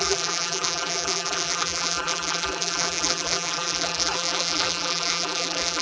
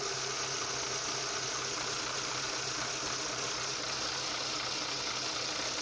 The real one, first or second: second